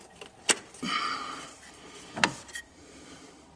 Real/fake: real